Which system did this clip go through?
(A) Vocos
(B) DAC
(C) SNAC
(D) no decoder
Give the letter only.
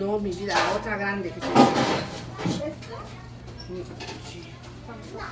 D